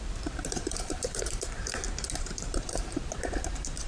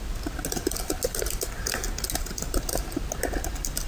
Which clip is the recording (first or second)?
second